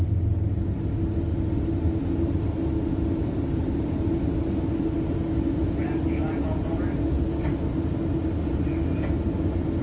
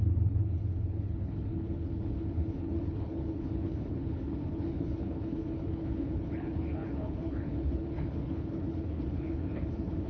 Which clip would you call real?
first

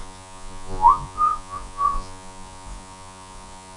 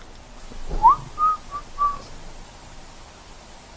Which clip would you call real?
second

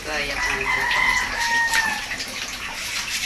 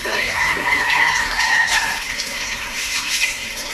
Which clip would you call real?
first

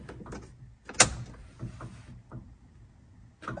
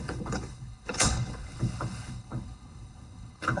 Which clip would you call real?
first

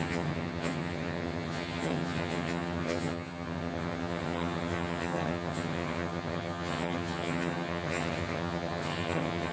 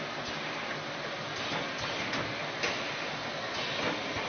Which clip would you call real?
second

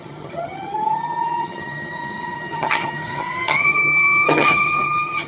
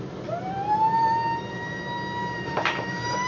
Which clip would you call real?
second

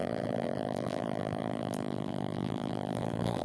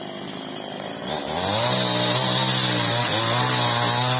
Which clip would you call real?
second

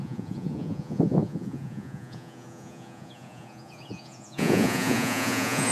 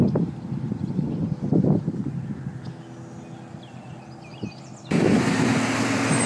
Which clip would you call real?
second